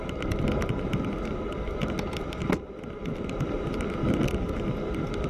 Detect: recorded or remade recorded